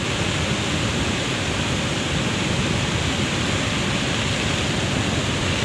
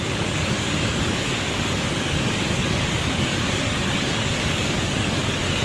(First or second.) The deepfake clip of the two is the second